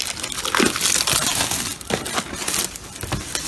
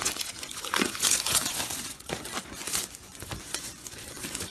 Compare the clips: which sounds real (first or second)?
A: first